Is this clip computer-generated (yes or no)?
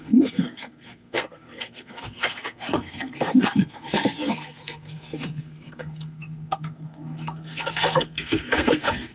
yes